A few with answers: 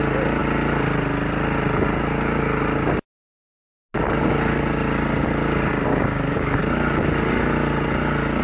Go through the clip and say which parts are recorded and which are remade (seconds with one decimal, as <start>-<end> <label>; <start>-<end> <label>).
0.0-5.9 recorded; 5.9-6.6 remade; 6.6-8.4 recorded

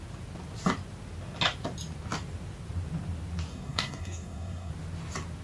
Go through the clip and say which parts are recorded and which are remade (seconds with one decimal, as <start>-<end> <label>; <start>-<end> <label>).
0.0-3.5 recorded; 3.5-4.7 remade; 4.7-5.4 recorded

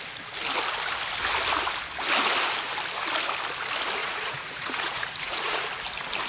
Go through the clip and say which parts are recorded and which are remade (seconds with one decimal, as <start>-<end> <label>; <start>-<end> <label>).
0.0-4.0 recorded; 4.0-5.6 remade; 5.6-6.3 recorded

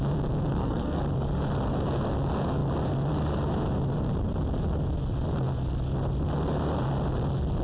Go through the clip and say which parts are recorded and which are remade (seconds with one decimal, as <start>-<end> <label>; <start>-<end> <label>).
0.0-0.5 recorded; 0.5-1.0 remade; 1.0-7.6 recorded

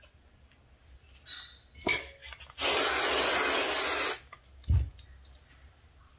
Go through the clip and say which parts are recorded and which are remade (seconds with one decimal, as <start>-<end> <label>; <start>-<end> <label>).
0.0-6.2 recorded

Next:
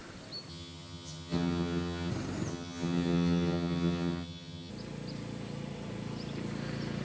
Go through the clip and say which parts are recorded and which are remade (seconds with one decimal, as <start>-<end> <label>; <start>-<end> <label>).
0.0-0.5 recorded; 0.5-2.1 remade; 2.1-2.5 recorded; 2.5-4.7 remade; 4.7-7.0 recorded

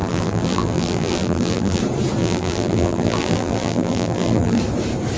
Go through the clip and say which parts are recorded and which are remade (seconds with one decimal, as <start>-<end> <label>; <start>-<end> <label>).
0.0-1.8 remade; 1.8-2.2 recorded; 2.2-4.6 remade; 4.6-5.2 recorded

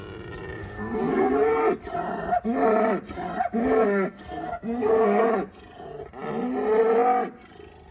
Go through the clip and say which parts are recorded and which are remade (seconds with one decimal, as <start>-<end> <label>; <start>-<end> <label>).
0.0-0.6 recorded; 0.6-1.6 remade; 1.6-3.6 recorded; 3.6-5.3 remade; 5.3-7.9 recorded